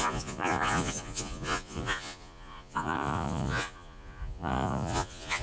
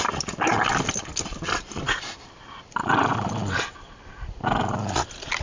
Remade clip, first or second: first